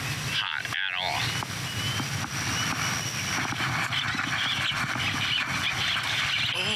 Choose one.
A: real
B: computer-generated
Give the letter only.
A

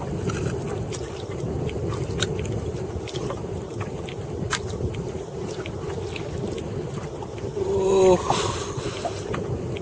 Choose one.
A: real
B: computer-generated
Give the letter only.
A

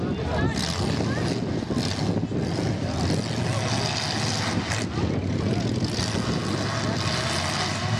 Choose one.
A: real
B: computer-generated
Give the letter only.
A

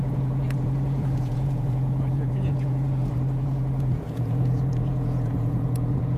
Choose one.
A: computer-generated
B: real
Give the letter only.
A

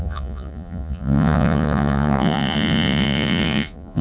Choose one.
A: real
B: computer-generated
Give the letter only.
B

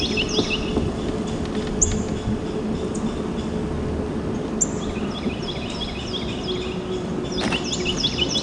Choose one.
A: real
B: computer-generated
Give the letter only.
A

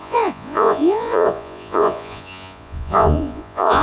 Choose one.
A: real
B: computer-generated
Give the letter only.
B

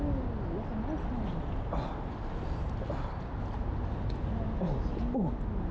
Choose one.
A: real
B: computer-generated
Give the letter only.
A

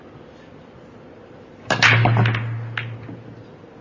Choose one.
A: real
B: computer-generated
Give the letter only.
A